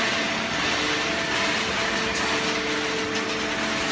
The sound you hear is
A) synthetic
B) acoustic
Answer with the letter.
B